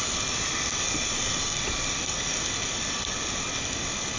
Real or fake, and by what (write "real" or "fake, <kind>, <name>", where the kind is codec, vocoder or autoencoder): real